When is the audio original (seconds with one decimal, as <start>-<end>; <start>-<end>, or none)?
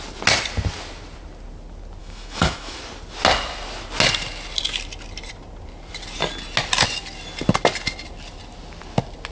0.0-2.0; 2.8-9.3